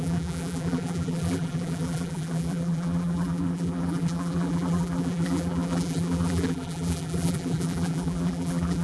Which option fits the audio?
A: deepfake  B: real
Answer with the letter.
A